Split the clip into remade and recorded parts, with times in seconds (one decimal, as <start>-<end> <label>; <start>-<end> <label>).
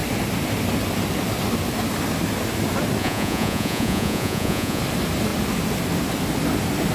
0.0-3.0 recorded; 3.0-4.8 remade; 4.8-6.9 recorded